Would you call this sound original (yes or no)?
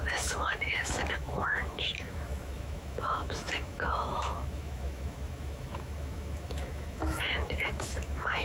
no